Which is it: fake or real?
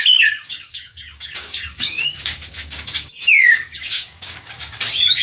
fake